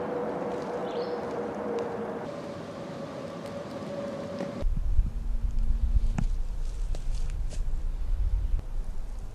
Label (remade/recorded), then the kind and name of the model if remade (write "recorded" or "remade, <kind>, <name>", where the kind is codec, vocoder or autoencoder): recorded